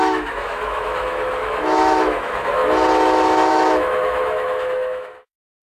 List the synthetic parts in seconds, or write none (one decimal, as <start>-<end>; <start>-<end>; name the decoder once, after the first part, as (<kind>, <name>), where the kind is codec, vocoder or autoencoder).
0.0-2.6 (autoencoder, DAC-VAE); 3.5-5.6